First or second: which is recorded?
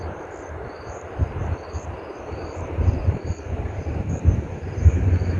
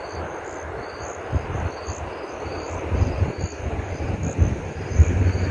second